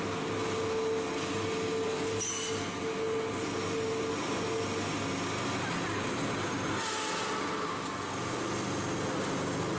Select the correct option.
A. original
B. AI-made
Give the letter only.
A